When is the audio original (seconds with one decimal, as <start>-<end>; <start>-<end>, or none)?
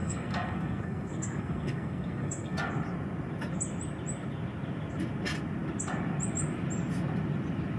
2.7-7.8